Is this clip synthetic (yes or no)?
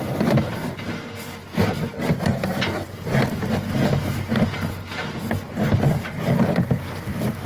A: no